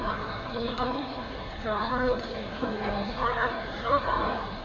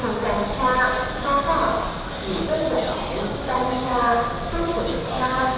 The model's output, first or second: first